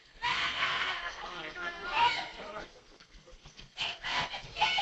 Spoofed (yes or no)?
yes